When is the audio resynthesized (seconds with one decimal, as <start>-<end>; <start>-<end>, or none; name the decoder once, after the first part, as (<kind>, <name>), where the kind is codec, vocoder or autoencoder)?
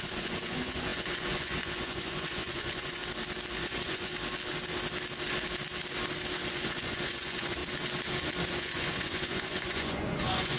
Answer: 0.0-3.0 (vocoder, Vocos); 3.5-4.1; 6.5-7.6; 8.5-10.6